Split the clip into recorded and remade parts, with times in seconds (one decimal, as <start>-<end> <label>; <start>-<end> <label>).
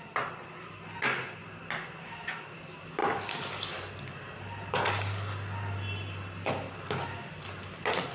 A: 0.0-8.1 recorded